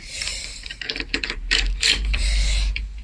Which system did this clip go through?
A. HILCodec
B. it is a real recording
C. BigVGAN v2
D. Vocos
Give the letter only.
C